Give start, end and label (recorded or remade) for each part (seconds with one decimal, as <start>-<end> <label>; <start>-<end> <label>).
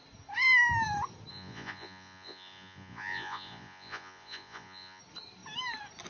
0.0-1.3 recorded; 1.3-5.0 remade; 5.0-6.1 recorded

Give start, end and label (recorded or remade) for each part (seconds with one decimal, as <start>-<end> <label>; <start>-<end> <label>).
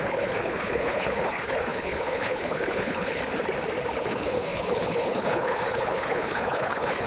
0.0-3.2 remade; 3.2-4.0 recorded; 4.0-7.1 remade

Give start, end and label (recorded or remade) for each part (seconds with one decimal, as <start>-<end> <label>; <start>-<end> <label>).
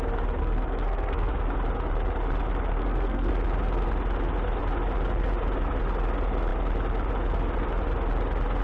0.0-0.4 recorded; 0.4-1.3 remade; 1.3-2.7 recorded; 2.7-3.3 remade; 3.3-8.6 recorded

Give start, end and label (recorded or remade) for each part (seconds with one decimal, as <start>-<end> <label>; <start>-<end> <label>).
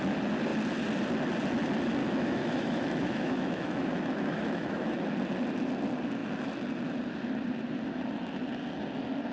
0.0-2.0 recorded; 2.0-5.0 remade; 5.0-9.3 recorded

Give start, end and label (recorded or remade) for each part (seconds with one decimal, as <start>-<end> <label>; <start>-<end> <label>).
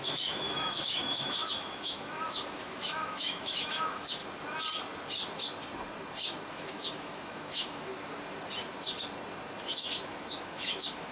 0.0-4.2 remade; 4.2-6.5 recorded; 6.5-7.9 remade; 7.9-9.6 recorded; 9.6-11.1 remade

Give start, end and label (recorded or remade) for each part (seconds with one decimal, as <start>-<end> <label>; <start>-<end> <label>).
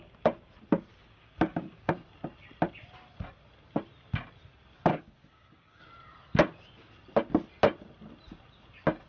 0.0-0.9 recorded; 0.9-1.9 remade; 1.9-4.9 recorded; 4.9-5.8 remade; 5.8-9.1 recorded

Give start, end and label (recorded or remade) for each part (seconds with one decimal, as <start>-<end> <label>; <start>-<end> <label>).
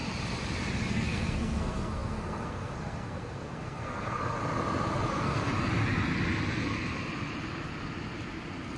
0.0-0.9 recorded; 0.9-4.4 remade; 4.4-5.1 recorded; 5.1-5.5 remade; 5.5-8.8 recorded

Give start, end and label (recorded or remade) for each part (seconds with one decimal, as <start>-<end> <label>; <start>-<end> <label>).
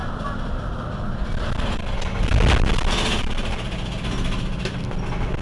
0.0-5.4 recorded